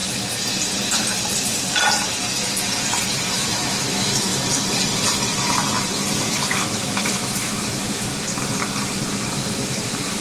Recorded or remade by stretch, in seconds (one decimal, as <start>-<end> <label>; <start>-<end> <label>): 0.0-3.3 recorded; 3.3-4.3 remade; 4.3-6.2 recorded; 6.2-8.1 remade; 8.1-9.3 recorded; 9.3-10.2 remade